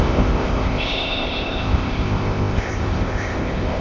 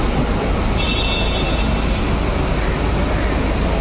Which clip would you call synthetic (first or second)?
first